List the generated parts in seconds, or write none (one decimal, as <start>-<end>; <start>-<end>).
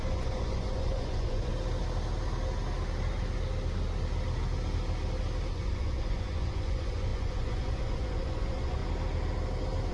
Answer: 0.0-1.5; 5.5-8.8